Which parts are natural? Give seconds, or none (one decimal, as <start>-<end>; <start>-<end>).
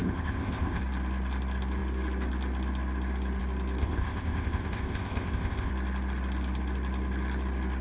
0.8-3.8; 5.7-7.8